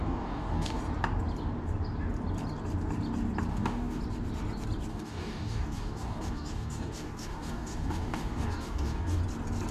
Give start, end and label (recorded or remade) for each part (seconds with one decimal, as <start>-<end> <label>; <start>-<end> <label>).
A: 0.0-0.8 remade; 0.8-3.5 recorded; 3.5-4.0 remade; 4.0-4.9 recorded; 4.9-9.2 remade; 9.2-9.7 recorded